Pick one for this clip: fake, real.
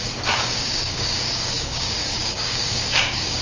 fake